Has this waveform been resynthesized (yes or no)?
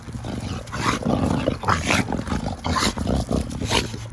no